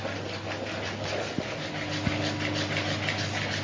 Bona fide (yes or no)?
yes